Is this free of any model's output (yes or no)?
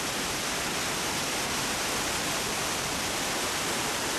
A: yes